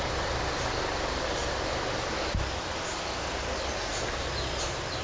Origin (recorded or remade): recorded